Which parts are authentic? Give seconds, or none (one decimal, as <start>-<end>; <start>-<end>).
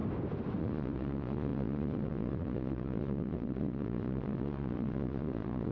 0.0-0.6